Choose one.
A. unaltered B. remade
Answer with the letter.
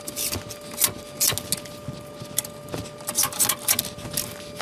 A